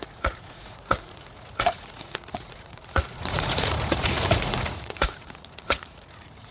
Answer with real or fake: fake